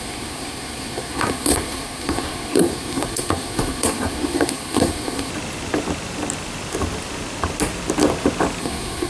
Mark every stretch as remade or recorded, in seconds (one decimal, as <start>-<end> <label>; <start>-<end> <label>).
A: 0.0-5.3 remade; 5.3-8.6 recorded; 8.6-9.1 remade